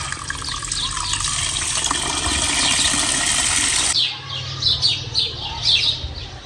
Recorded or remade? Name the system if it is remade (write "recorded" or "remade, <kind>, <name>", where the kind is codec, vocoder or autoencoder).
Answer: recorded